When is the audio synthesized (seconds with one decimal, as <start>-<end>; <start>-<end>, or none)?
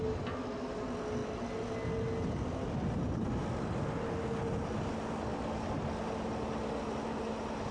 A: none